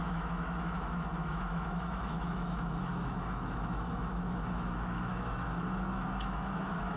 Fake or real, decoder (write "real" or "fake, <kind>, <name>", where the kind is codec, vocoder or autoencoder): fake, autoencoder, DAC-VAE